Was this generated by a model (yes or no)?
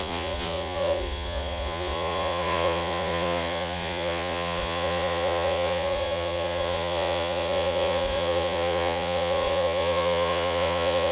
yes